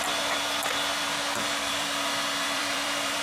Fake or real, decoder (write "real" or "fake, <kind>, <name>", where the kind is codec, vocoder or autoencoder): fake, vocoder, BigVGAN v2